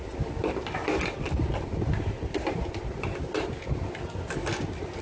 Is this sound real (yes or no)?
yes